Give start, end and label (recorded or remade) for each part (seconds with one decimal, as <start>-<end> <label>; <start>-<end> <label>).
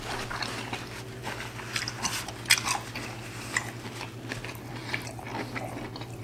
0.0-6.2 recorded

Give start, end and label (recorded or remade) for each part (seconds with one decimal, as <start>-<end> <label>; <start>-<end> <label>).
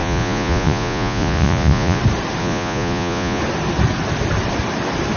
0.0-2.0 remade; 2.0-2.4 recorded; 2.4-3.4 remade; 3.4-5.2 recorded